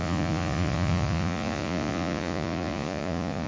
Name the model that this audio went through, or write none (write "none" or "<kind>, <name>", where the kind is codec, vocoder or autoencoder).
vocoder, Vocos